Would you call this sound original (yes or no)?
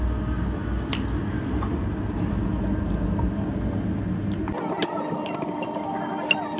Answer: yes